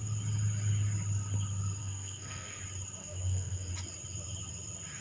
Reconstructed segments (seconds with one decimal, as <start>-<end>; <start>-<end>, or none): 1.8-2.6; 3.0-3.7